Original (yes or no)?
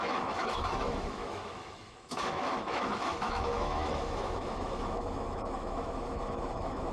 no